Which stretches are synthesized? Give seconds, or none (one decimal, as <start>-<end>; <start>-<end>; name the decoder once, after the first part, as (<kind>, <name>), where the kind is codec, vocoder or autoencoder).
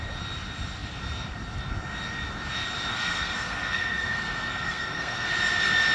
2.9-5.3 (codec, SNAC)